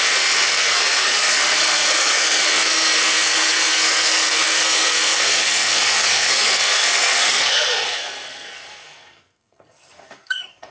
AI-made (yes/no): yes